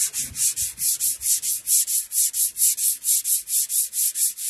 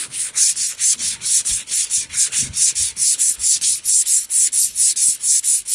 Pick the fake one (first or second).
second